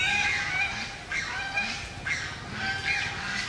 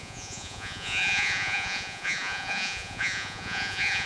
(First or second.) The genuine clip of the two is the first